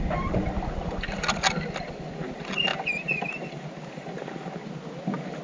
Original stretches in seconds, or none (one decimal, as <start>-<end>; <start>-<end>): 0.0-5.4